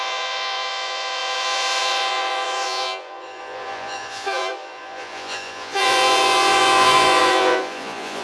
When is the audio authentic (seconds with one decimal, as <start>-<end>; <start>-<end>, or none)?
none